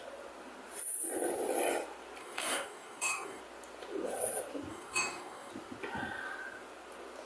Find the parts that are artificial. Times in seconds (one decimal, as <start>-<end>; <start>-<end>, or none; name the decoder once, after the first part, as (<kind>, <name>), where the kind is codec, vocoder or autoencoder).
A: 2.2-3.4 (codec, DAC); 4.7-5.5